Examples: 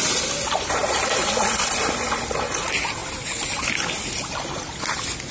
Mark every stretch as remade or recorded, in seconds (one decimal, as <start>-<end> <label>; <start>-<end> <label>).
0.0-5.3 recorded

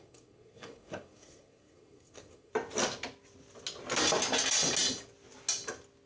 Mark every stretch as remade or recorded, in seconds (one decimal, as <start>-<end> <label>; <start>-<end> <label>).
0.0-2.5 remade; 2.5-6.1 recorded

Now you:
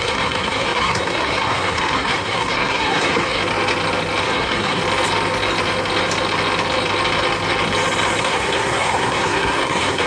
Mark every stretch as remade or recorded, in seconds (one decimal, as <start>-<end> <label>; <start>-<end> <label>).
0.0-3.4 remade; 3.4-4.2 recorded; 4.2-4.8 remade; 4.8-8.2 recorded; 8.2-10.1 remade

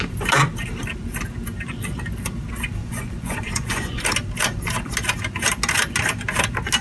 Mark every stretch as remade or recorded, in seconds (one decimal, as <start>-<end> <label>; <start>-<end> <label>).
0.0-2.8 recorded; 2.8-4.0 remade; 4.0-6.8 recorded

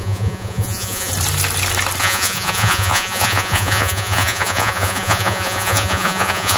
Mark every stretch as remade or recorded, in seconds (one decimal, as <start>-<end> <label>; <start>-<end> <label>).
0.0-1.1 remade; 1.1-2.0 recorded; 2.0-6.6 remade